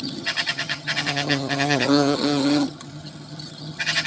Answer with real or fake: fake